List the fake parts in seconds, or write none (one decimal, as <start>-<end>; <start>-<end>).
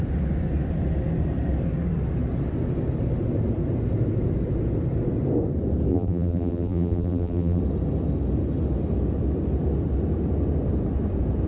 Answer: 5.9-7.6